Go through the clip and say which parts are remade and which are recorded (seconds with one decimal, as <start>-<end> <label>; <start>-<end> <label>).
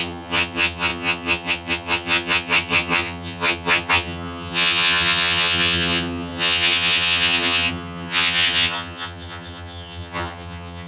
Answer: 0.0-10.9 remade